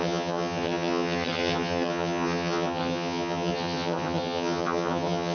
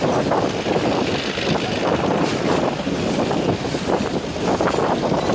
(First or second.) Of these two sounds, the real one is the second